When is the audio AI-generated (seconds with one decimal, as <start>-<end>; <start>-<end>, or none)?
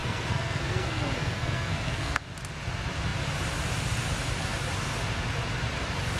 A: 0.0-2.3